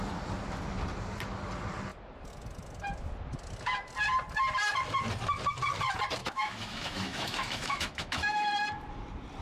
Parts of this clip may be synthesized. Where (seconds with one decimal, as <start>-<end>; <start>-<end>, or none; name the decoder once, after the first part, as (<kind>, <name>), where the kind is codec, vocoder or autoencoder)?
6.2-8.5 (autoencoder, DAC-VAE)